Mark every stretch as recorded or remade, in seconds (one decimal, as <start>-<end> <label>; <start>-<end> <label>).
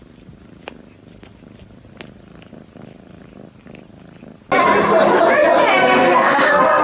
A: 0.0-5.8 recorded; 5.8-6.8 remade